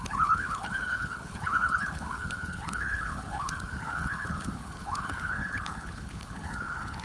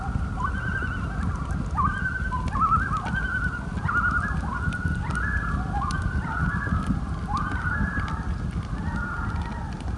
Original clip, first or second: second